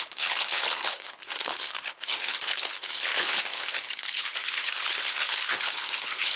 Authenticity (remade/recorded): remade